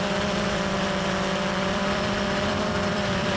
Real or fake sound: fake